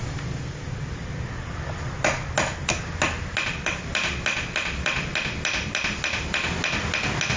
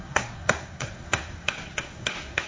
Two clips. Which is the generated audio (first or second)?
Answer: second